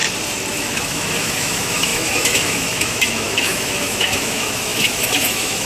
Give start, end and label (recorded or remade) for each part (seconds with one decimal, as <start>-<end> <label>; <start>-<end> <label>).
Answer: 0.0-0.5 recorded; 0.5-5.7 remade